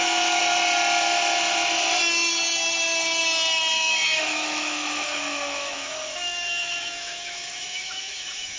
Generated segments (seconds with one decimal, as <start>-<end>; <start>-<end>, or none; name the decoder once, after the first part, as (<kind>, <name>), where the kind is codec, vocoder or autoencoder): 0.0-0.4 (autoencoder, DAC-VAE); 3.7-8.6